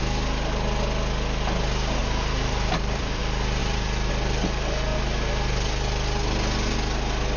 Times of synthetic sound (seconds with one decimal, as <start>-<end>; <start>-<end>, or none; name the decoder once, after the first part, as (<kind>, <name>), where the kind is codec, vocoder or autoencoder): 2.0-3.2 (vocoder, BigVGAN v2); 3.6-4.1